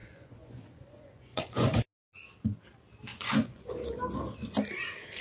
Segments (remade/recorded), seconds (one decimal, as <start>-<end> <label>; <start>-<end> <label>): 0.0-1.8 remade; 1.8-3.1 recorded; 3.1-3.7 remade; 3.7-5.2 recorded